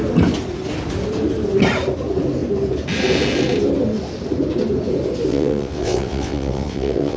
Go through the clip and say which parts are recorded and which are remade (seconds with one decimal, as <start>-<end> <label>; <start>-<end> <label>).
0.0-5.3 recorded; 5.3-7.2 remade